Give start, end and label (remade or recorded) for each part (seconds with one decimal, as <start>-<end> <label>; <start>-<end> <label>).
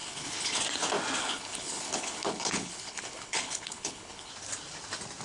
0.0-0.6 remade; 0.6-1.2 recorded; 1.2-4.3 remade; 4.3-5.2 recorded